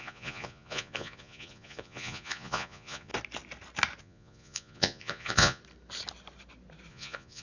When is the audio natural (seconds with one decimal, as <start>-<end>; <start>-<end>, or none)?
3.1-4.0; 5.6-6.9